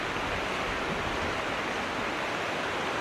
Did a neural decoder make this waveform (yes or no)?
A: no